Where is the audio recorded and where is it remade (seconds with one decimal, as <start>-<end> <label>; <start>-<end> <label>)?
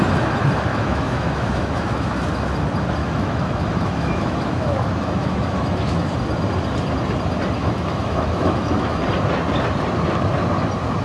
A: 0.0-0.7 recorded; 0.7-2.2 remade; 2.2-3.0 recorded; 3.0-6.1 remade; 6.1-7.6 recorded; 7.6-9.0 remade; 9.0-11.0 recorded